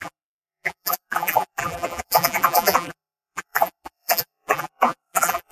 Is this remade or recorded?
remade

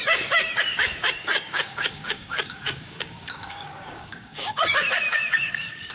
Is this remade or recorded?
remade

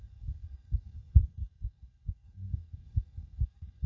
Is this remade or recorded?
remade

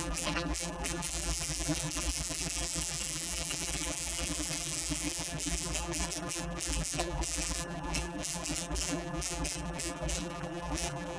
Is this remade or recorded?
remade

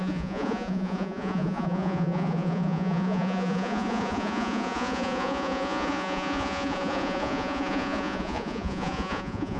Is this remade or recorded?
remade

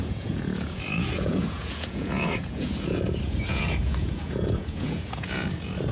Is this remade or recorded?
remade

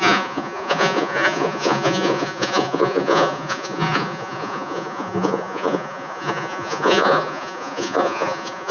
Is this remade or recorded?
remade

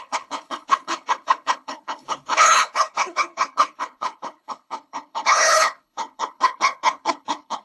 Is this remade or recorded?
remade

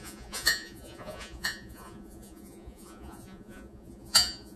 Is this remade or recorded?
remade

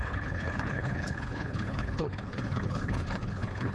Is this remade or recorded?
remade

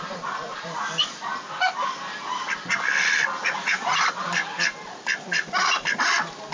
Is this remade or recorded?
remade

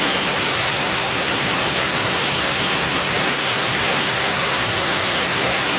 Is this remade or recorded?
remade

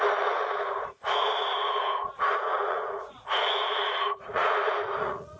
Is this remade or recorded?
remade